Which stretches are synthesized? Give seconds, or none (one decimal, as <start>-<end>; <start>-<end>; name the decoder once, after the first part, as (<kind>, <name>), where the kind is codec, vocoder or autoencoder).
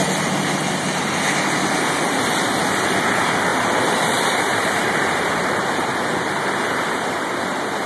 3.5-6.3 (vocoder, BigVGAN v2)